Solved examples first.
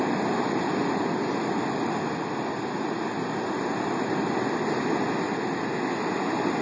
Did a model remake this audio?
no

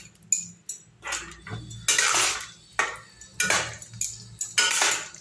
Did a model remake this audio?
no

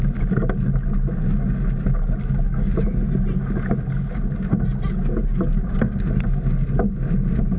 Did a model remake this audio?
no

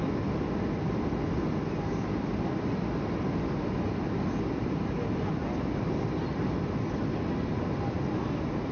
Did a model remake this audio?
no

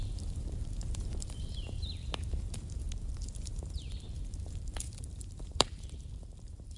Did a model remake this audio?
yes